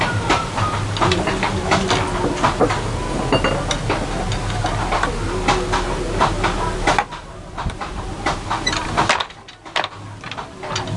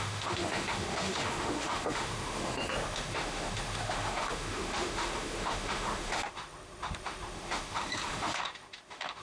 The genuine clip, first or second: first